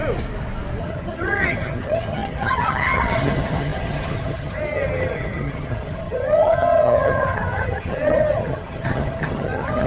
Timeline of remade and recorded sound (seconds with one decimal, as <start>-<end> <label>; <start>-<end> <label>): 0.0-0.8 recorded; 0.8-9.9 remade